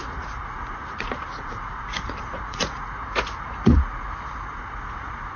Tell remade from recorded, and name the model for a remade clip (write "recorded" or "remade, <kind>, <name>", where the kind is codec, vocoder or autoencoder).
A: remade, vocoder, Vocos